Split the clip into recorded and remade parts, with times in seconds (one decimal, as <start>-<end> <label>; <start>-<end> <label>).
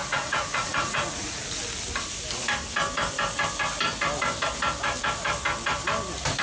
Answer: 0.0-1.4 remade; 1.4-6.4 recorded